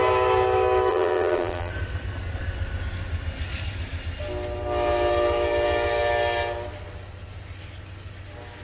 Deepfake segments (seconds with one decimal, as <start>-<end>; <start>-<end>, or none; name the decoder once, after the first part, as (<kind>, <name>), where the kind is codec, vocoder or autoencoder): 0.9-1.7 (vocoder, BigVGAN v2)